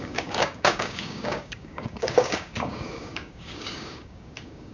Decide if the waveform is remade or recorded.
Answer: remade